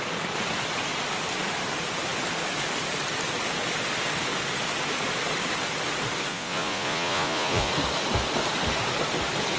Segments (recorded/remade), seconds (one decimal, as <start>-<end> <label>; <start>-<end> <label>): 0.0-6.3 recorded; 6.3-7.7 remade; 7.7-9.6 recorded